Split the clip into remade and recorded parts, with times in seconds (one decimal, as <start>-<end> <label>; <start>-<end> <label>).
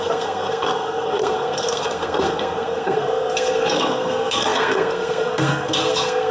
0.0-6.3 remade